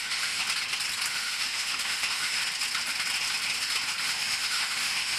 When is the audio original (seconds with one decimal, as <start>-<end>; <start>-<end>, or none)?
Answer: 0.4-1.1; 2.4-4.0